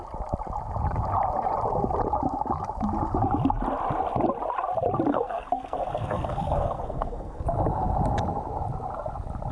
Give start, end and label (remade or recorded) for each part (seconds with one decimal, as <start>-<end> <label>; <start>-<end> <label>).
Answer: 0.0-5.1 recorded; 5.1-7.4 remade; 7.4-9.5 recorded